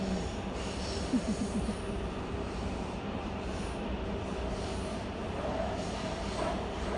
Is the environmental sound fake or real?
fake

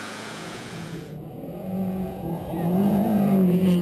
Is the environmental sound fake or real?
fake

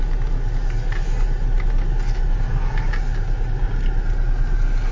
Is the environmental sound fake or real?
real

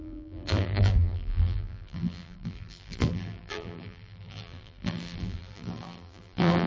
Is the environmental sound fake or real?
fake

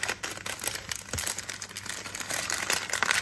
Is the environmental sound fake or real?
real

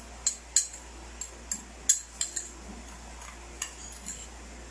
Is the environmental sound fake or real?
real